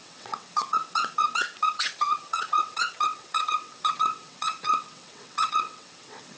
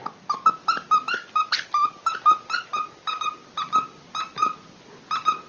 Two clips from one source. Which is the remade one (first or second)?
first